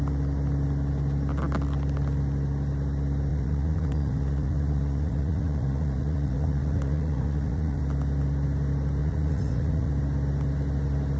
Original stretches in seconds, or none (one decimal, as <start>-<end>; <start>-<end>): 0.0-3.3; 7.8-9.0; 9.9-11.2